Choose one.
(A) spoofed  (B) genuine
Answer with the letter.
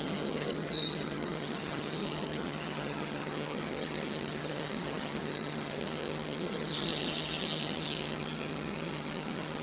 A